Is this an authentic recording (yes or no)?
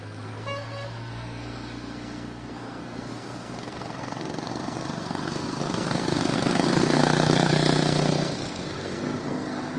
no